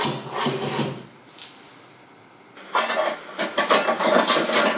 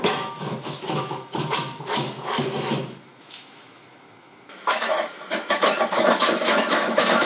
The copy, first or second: second